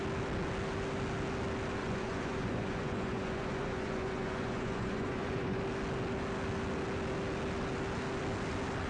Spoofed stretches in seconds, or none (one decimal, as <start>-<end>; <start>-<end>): 1.8-5.6